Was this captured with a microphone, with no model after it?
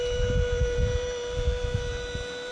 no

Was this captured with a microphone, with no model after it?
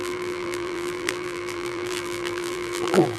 no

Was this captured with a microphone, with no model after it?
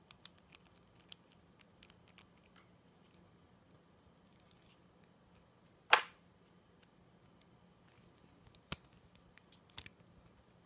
yes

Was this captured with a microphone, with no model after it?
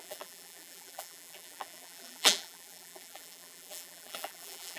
no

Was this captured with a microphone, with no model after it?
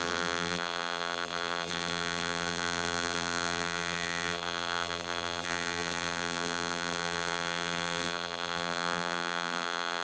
no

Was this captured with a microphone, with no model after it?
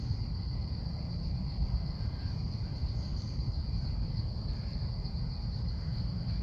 no